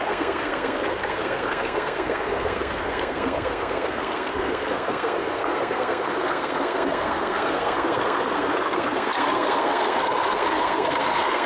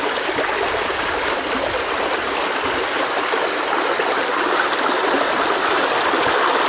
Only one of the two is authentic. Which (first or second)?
second